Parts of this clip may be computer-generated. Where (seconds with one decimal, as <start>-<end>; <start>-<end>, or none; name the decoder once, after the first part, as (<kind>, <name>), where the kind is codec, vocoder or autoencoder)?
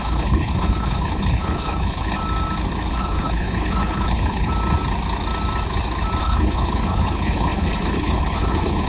0.0-2.2 (codec, HILCodec); 2.9-4.5; 6.2-8.9